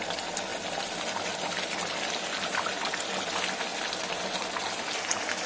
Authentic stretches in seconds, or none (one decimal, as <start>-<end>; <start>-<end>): 0.0-5.5